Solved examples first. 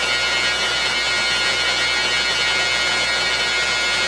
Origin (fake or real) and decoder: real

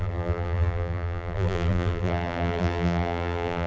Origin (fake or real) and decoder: fake, vocoder, BigVGAN v2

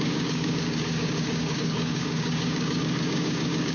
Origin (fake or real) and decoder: fake, codec, DAC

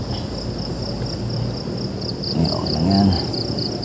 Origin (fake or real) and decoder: real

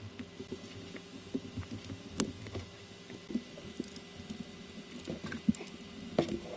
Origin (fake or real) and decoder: real